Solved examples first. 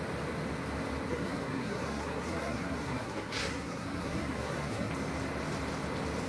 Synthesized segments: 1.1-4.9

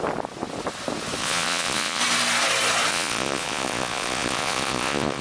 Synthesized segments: 1.2-2.0; 2.9-5.2

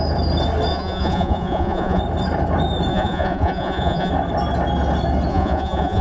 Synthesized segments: 0.7-2.0; 2.9-4.1; 5.3-6.0

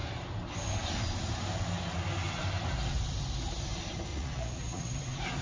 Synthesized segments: 4.1-4.9

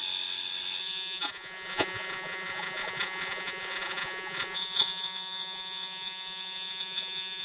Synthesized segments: 0.8-7.4

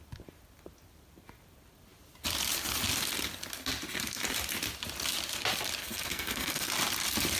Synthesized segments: 5.8-6.7

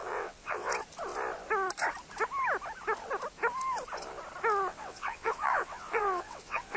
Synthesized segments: 0.0-0.7; 4.7-6.8

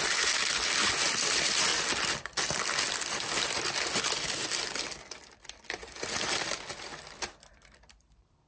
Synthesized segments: 0.0-1.7; 4.6-8.5